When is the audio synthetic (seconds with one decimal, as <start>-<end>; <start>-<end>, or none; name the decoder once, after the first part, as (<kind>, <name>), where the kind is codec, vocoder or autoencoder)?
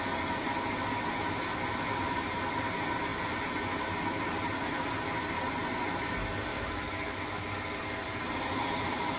6.5-7.8 (autoencoder, DAC-VAE)